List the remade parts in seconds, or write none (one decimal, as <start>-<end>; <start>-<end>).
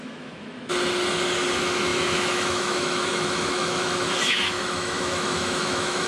0.0-0.7; 1.5-6.1